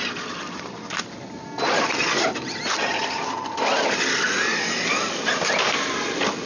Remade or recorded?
recorded